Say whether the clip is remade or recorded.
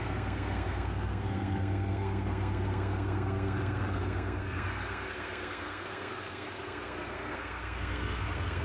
remade